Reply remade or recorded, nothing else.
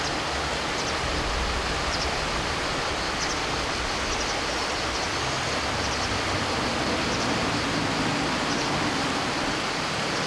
recorded